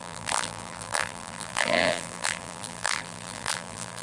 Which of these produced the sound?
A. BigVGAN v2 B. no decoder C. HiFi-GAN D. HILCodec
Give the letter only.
A